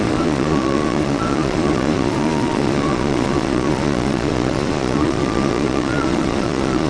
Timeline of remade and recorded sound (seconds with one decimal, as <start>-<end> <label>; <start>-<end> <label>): 0.0-6.9 remade